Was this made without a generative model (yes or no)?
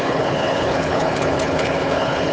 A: no